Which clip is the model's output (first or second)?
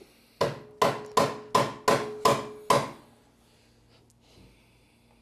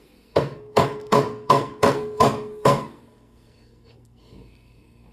second